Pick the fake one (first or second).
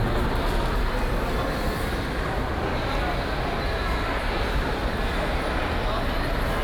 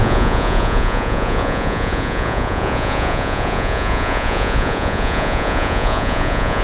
second